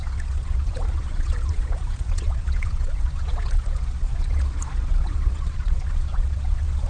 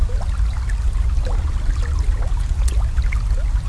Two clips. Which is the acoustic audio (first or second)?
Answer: second